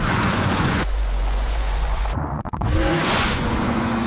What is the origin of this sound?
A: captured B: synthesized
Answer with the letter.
B